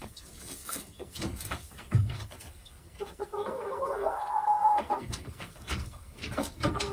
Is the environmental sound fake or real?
fake